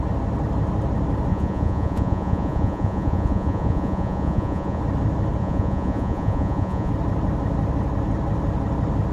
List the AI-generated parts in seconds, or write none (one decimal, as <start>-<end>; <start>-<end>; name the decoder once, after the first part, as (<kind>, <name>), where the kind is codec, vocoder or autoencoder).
1.3-4.8 (vocoder, Vocos); 5.4-6.9